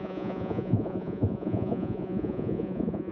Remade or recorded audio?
remade